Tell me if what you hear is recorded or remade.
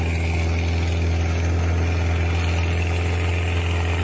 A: recorded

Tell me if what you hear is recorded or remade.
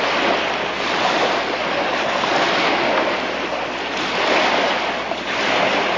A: recorded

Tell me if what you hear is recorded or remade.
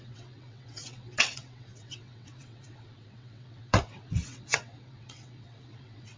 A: remade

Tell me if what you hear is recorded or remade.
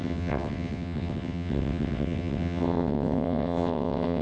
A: remade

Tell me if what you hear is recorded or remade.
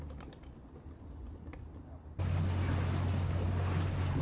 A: recorded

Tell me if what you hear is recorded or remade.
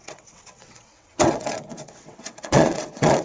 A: remade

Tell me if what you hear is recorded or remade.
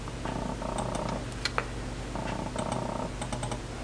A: recorded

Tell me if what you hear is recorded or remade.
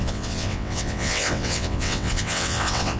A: remade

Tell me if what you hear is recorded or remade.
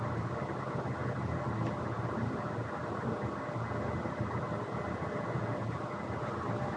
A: recorded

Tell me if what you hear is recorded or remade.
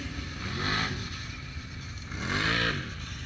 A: recorded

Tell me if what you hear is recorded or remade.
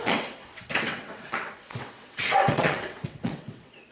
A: remade